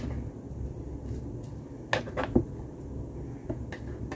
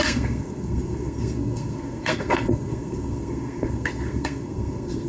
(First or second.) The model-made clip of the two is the second